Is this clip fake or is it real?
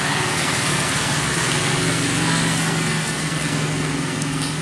fake